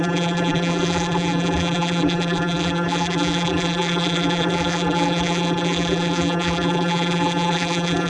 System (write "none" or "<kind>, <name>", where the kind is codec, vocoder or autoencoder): vocoder, BigVGAN v2